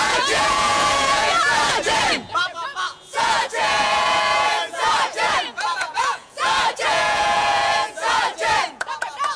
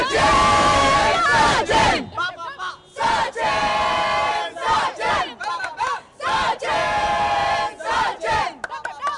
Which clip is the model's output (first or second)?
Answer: first